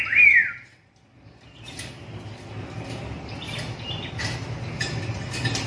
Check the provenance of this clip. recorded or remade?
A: recorded